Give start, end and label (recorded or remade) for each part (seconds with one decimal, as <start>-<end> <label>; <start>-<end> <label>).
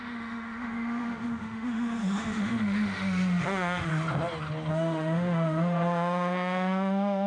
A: 0.0-3.9 remade; 3.9-4.7 recorded; 4.7-7.3 remade